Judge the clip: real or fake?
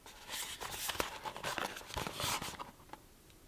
real